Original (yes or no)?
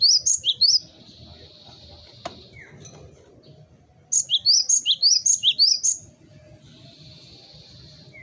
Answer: yes